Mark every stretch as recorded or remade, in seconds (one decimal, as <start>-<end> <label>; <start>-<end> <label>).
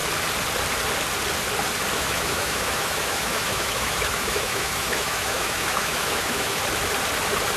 0.0-2.0 recorded; 2.0-6.6 remade; 6.6-7.6 recorded